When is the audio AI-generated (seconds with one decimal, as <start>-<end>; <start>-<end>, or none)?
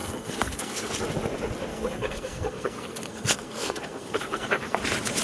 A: 0.0-0.9; 1.7-4.8